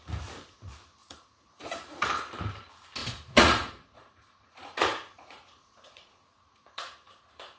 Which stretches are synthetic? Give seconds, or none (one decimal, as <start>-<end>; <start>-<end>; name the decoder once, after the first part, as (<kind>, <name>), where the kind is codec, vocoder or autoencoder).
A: 1.0-1.7 (vocoder, Vocos); 3.0-7.6